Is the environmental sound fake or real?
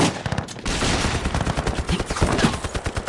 real